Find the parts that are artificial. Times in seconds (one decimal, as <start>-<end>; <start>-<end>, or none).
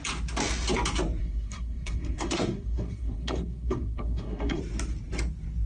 1.2-4.6